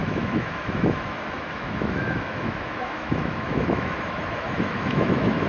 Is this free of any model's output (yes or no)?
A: no